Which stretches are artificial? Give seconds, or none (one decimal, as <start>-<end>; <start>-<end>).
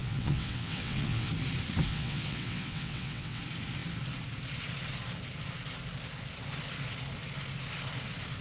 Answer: 0.0-1.3; 1.9-3.4